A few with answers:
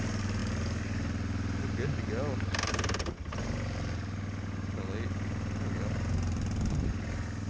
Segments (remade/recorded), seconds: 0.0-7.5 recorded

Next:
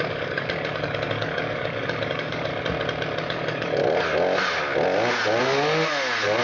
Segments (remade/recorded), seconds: 0.0-2.5 remade; 2.5-3.2 recorded; 3.2-3.8 remade; 3.8-5.4 recorded; 5.4-6.4 remade

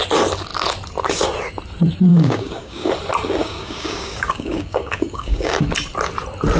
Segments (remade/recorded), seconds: 0.0-2.1 recorded; 2.1-2.9 remade; 2.9-3.4 recorded; 3.4-5.6 remade; 5.6-6.6 recorded

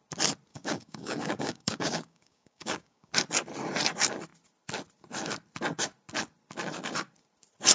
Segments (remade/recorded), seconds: 0.0-0.5 recorded; 0.5-3.1 remade; 3.1-7.7 recorded

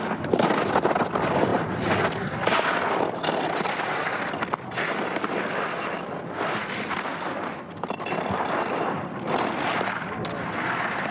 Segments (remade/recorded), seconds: 0.0-11.1 recorded